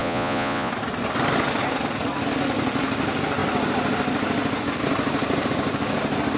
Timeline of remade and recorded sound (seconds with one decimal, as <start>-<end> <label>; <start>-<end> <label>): 0.0-0.7 remade; 0.7-6.4 recorded